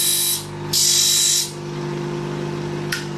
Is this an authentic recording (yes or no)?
yes